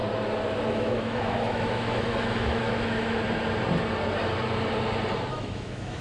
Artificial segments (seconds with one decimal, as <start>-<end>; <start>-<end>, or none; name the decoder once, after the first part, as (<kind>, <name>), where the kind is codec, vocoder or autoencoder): 0.7-3.2 (autoencoder, DAC-VAE); 5.3-6.0